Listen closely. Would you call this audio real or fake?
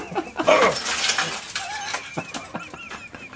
real